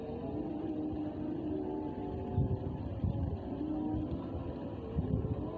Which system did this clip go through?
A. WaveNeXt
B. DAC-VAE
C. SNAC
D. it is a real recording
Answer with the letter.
D